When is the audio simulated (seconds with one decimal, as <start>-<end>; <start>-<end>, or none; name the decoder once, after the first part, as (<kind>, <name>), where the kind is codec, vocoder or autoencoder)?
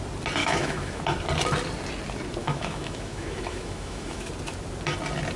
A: 0.4-1.0 (autoencoder, DAC-VAE); 2.4-4.3